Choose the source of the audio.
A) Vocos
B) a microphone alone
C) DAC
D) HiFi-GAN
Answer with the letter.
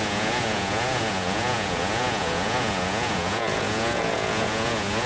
A